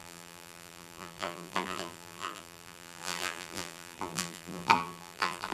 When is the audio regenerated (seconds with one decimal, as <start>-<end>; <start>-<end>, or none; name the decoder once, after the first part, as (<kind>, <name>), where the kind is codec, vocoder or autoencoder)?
0.0-5.5 (vocoder, BigVGAN v2)